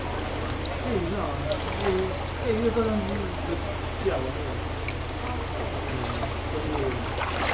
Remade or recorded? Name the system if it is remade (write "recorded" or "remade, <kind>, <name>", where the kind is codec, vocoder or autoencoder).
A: recorded